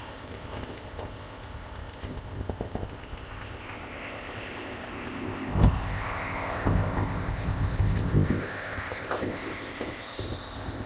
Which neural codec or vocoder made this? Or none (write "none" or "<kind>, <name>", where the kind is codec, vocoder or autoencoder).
codec, ZipCodec